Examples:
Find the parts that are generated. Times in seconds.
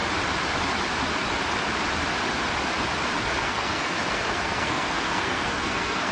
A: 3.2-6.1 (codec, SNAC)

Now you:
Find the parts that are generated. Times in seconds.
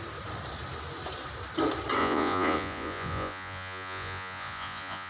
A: 2.0-5.1 (vocoder, Vocos)